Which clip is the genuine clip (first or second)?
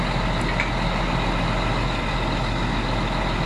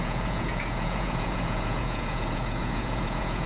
first